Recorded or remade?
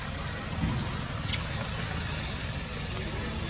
recorded